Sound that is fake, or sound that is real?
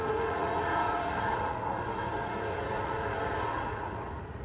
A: fake